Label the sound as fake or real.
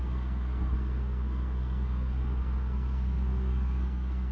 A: fake